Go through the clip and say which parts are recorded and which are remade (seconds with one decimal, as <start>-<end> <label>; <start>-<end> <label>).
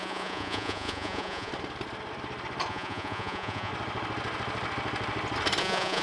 0.0-1.5 remade; 1.5-2.7 recorded; 2.7-3.7 remade; 3.7-5.6 recorded; 5.6-6.0 remade